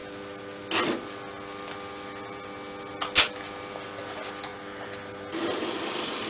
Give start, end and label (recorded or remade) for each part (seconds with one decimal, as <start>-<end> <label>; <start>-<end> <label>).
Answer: 0.0-6.3 recorded